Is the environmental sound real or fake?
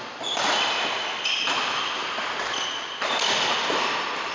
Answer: real